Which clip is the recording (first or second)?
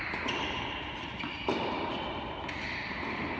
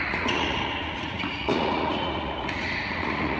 first